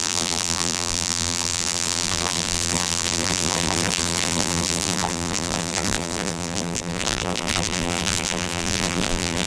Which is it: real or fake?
fake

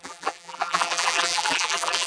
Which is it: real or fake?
fake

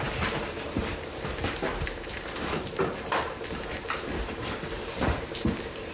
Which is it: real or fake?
fake